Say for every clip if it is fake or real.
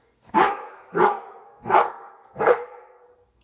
fake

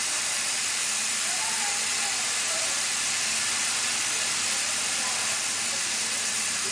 fake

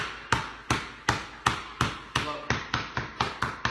real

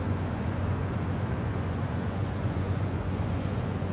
fake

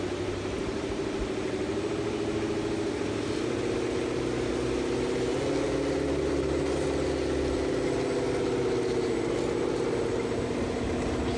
real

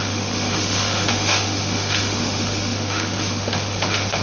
fake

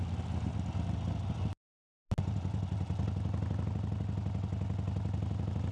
real